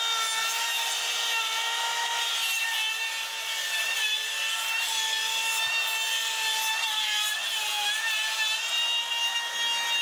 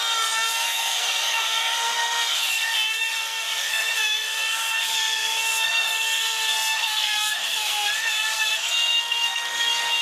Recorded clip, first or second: first